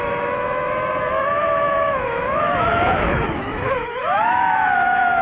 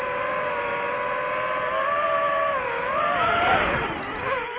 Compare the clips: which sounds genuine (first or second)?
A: second